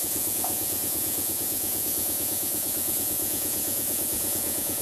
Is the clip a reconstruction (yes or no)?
yes